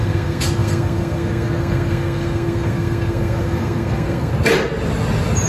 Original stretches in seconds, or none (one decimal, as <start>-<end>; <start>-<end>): 4.3-5.5